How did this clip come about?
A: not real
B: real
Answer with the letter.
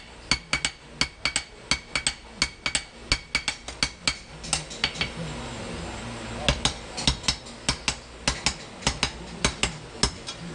B